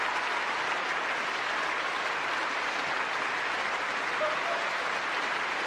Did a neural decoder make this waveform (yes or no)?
no